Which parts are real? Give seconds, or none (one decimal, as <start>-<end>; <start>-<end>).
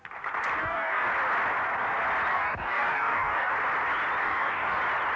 0.0-0.6; 1.1-2.3; 3.5-4.2; 4.8-5.2